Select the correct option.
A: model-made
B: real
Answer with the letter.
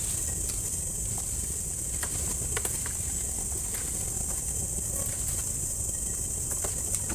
B